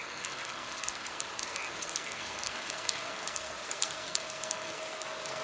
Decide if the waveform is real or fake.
fake